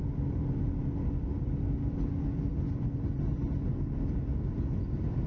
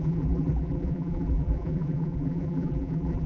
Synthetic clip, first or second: second